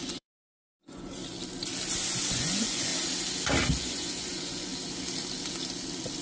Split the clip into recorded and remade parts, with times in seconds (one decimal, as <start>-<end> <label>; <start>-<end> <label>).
0.0-1.2 remade; 1.2-2.3 recorded; 2.3-2.9 remade; 2.9-3.8 recorded; 3.8-4.7 remade; 4.7-6.2 recorded